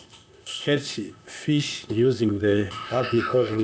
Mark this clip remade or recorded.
remade